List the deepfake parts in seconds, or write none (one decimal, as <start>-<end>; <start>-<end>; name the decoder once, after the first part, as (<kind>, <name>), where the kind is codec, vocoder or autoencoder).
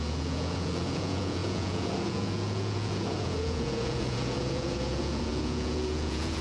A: 0.0-6.4 (vocoder, Vocos)